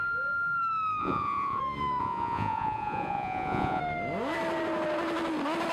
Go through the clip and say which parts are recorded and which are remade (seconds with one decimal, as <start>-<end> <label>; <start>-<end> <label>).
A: 0.0-1.0 recorded; 1.0-1.6 remade; 1.6-2.0 recorded; 2.0-3.8 remade; 3.8-5.7 recorded